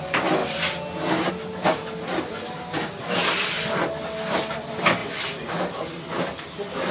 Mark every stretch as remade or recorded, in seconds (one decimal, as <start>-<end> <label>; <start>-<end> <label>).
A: 0.0-6.9 recorded